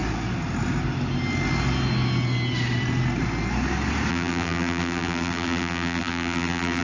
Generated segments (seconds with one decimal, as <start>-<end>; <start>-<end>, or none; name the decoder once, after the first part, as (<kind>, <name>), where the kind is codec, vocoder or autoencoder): 4.1-6.8 (vocoder, BigVGAN v2)